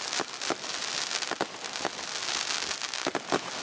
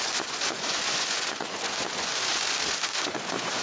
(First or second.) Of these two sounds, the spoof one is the second